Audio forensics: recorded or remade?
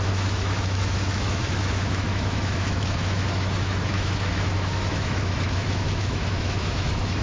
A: remade